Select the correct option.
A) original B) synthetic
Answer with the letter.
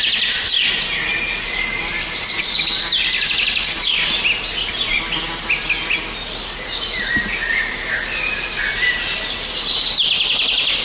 A